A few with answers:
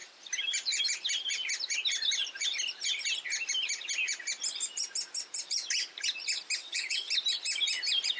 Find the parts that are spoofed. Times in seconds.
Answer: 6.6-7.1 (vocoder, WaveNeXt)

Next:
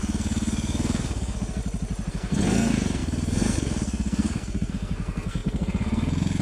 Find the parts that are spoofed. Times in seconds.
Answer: 0.0-1.6 (codec, SNAC); 2.1-6.4

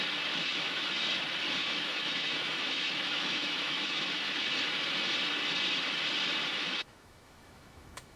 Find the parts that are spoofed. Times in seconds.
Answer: 0.4-1.0 (autoencoder, DAC-VAE); 1.6-4.5; 6.5-8.2

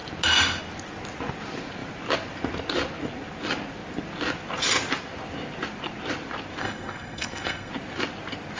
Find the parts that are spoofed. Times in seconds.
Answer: 6.6-7.7 (codec, SNAC)

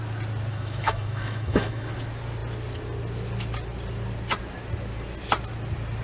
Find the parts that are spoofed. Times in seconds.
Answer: 0.5-1.9 (autoencoder, DAC-VAE)

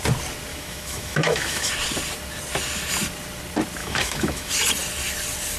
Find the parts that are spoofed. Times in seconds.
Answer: 0.5-1.7 (autoencoder, DAC-VAE); 3.8-4.5